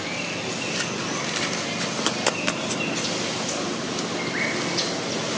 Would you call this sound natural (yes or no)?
yes